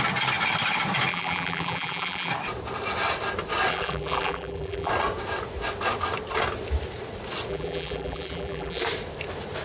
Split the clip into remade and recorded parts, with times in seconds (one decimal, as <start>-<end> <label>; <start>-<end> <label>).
0.0-1.1 recorded; 1.1-2.3 remade; 2.3-3.7 recorded; 3.7-4.9 remade; 4.9-7.5 recorded; 7.5-8.8 remade; 8.8-9.6 recorded